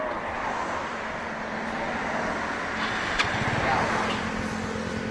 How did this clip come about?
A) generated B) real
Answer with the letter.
B